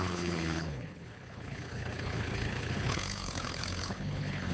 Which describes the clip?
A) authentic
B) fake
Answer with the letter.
B